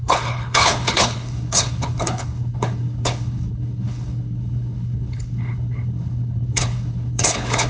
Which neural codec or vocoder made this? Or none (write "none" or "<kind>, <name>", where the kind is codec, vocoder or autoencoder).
codec, HILCodec